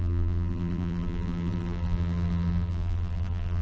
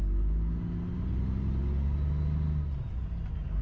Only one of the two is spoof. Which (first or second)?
first